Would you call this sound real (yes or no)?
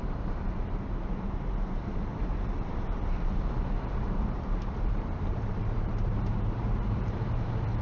no